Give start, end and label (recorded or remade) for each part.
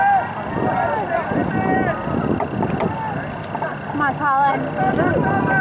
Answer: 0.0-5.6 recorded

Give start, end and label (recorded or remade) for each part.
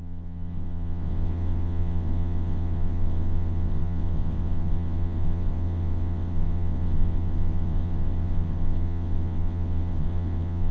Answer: 0.0-10.7 remade